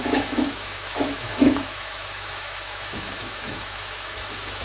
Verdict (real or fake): fake